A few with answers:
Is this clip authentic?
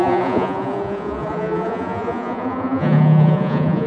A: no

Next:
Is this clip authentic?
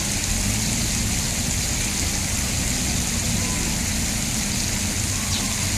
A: yes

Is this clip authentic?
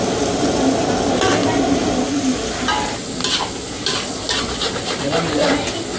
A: yes